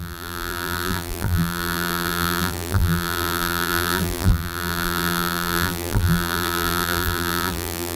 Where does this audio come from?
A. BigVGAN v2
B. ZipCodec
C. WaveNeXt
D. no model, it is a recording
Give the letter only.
A